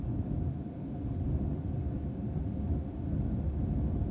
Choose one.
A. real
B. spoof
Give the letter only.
A